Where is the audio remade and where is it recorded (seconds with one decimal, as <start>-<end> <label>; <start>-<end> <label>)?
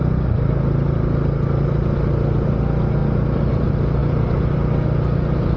0.0-5.6 recorded